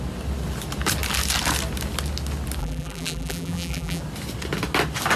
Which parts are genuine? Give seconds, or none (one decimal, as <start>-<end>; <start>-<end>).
0.0-2.6; 4.0-5.2